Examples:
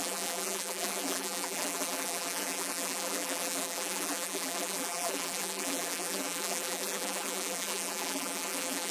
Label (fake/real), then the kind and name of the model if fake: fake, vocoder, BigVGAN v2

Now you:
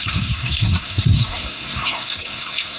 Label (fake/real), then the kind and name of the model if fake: fake, codec, SNAC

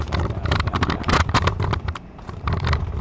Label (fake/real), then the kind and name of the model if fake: fake, vocoder, BigVGAN v2